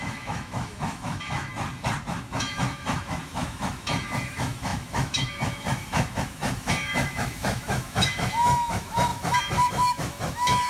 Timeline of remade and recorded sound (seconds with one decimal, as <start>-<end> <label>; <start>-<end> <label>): 0.0-1.5 remade; 1.5-2.1 recorded; 2.1-10.7 remade